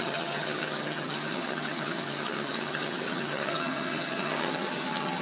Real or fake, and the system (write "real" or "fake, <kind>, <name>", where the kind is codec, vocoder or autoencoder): fake, vocoder, HiFi-GAN